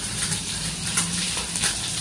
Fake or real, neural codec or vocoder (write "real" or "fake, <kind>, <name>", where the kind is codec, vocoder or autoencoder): fake, vocoder, BigVGAN v2